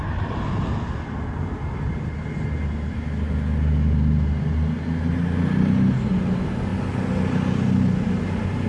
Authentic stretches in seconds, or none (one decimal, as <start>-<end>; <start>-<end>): 0.0-8.7